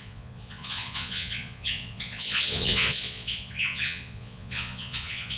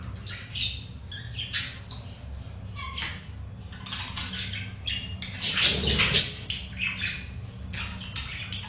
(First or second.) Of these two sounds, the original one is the second